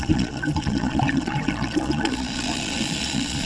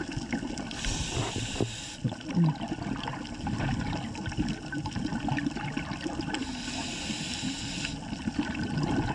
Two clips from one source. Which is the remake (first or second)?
first